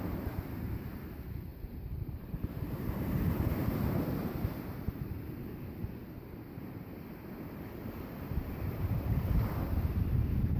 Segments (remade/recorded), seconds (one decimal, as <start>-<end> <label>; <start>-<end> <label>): 0.0-6.0 remade; 6.0-9.9 recorded; 9.9-10.6 remade